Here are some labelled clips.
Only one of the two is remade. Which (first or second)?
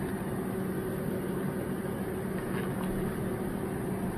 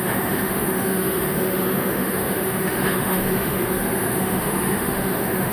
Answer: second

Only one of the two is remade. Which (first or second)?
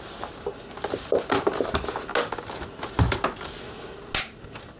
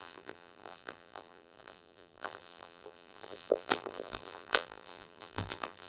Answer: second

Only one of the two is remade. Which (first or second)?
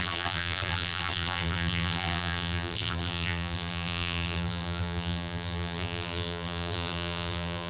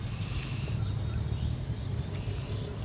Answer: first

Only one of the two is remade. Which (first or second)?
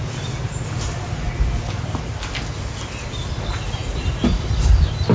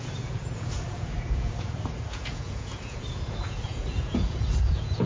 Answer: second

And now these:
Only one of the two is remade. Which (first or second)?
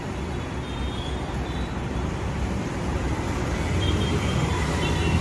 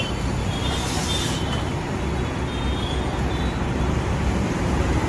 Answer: first